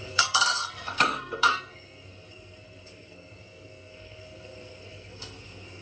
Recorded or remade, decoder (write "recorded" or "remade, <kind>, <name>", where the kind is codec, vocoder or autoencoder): remade, codec, SNAC